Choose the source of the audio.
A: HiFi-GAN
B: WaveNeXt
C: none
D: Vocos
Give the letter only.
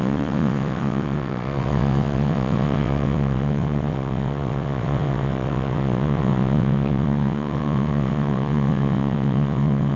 B